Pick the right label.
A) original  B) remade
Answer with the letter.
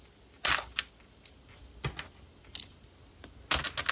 A